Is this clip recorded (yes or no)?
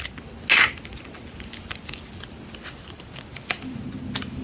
yes